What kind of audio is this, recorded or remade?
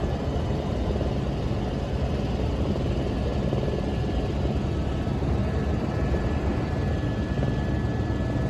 recorded